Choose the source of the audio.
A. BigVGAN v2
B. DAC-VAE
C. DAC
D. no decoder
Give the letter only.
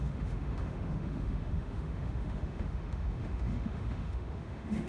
B